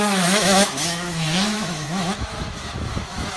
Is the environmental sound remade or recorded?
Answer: remade